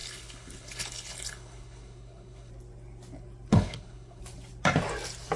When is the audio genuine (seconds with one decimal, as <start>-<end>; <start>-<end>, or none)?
2.5-3.5; 4.2-5.4